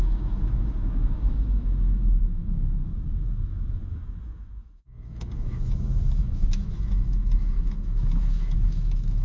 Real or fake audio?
fake